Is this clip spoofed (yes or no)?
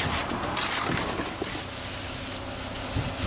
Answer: no